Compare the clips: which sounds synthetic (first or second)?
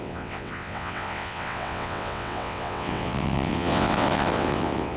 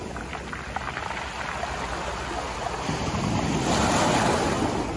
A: first